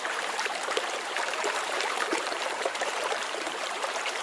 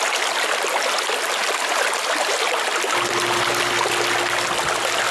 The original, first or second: second